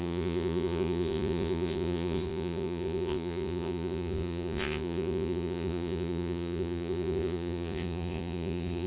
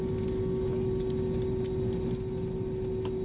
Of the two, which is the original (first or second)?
second